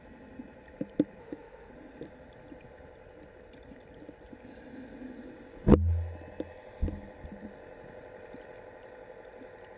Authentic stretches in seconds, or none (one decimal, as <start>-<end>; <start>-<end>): 0.0-1.2; 1.7-9.8

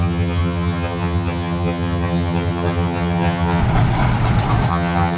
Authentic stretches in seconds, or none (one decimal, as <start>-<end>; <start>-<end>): 3.6-4.7

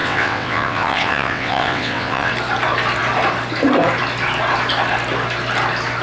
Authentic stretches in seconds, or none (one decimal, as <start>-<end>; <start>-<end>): 2.3-6.0